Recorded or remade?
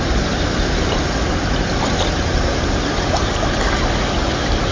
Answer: recorded